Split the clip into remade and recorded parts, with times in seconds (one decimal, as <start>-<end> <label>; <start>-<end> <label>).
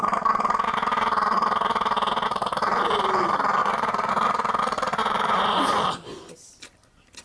0.0-3.6 recorded; 3.6-4.1 remade; 4.1-5.0 recorded; 5.0-5.6 remade; 5.6-7.2 recorded